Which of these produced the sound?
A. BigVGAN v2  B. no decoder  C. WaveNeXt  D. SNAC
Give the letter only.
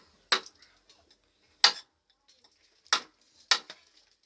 B